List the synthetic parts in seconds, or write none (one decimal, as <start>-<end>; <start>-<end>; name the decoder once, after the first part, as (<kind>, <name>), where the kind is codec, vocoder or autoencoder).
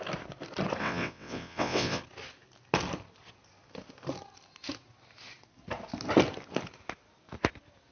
0.8-2.0 (vocoder, WaveNeXt)